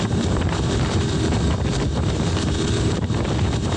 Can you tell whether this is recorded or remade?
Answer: remade